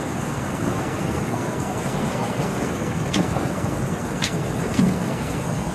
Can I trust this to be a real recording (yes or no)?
no